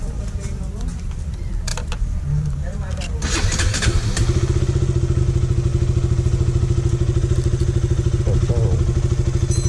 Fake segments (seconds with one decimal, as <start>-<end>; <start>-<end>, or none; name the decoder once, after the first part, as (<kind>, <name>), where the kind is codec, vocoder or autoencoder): none